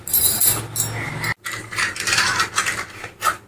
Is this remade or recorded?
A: recorded